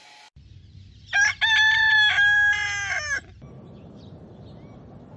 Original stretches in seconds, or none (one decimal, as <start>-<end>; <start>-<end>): 0.0-5.2